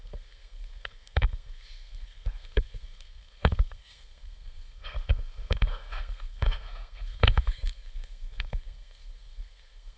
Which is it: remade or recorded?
remade